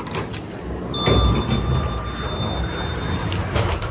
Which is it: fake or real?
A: real